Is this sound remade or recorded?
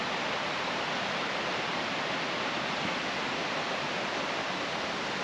recorded